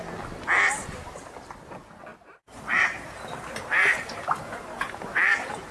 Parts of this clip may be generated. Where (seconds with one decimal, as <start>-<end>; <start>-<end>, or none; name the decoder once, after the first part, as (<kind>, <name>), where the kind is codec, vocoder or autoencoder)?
2.1-5.7 (vocoder, BigVGAN v2)